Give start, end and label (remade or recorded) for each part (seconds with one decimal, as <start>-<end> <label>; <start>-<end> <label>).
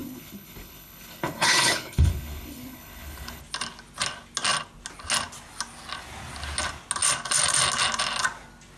0.0-3.4 remade; 3.4-8.8 recorded